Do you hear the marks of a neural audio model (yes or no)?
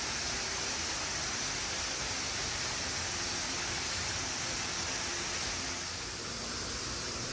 no